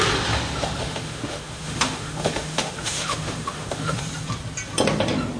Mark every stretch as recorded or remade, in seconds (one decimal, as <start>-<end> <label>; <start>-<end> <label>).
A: 0.0-0.8 recorded; 0.8-4.0 remade; 4.0-5.4 recorded